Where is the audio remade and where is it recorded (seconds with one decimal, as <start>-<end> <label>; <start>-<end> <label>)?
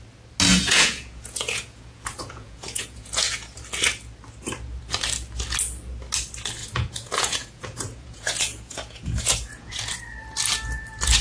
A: 0.0-0.5 recorded; 0.5-3.6 remade; 3.6-6.6 recorded; 6.6-9.7 remade; 9.7-11.2 recorded